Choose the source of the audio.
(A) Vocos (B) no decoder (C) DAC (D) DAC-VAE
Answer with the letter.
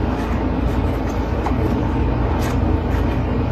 C